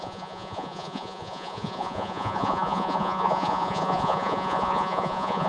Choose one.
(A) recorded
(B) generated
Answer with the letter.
B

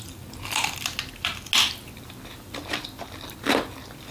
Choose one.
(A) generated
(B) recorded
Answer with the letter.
B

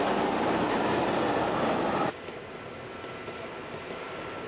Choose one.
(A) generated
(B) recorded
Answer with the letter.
B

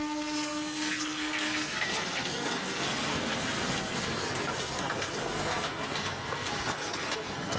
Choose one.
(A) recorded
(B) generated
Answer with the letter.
B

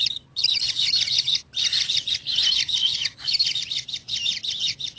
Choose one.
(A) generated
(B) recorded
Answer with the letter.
B